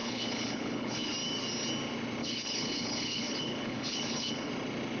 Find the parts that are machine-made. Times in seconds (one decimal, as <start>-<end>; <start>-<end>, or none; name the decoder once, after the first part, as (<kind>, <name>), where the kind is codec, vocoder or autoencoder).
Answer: 0.0-1.1 (codec, HILCodec); 2.2-4.5